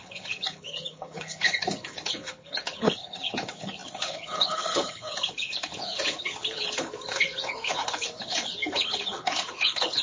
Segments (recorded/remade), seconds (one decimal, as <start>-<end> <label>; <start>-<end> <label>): 0.0-10.0 remade